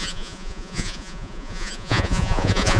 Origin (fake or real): fake